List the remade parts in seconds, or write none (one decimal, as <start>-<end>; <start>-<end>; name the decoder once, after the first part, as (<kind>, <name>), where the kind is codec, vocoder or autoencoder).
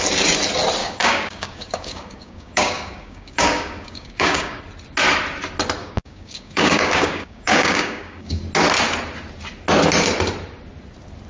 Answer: 0.8-4.6 (codec, DAC); 5.8-8.4